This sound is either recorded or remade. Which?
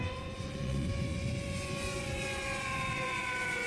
remade